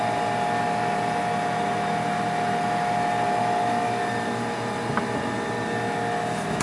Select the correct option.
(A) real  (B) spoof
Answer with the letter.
A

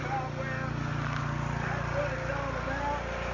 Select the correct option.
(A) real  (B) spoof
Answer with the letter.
A